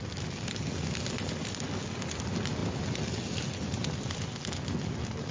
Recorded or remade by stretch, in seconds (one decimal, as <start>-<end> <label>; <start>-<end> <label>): 0.0-5.3 recorded